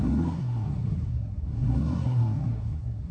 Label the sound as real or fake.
fake